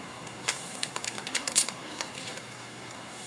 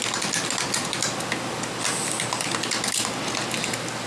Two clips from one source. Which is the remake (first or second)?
first